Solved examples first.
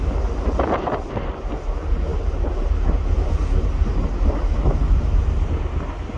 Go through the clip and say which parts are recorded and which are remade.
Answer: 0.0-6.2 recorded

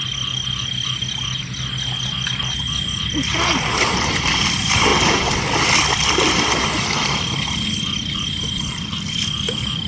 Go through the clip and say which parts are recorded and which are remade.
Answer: 0.0-9.9 recorded

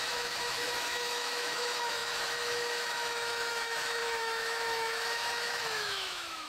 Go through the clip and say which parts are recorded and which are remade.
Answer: 0.0-6.5 remade

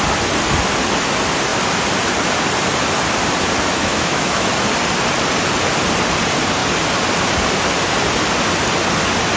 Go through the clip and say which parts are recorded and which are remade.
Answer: 0.0-3.7 recorded; 3.7-4.5 remade; 4.5-9.4 recorded

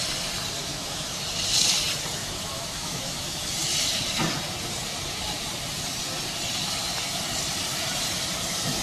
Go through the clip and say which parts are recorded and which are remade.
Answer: 0.0-0.6 recorded; 0.6-1.2 remade; 1.2-2.2 recorded; 2.2-3.4 remade; 3.4-8.8 recorded

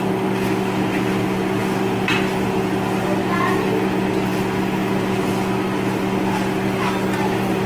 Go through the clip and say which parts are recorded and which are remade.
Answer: 0.0-7.7 recorded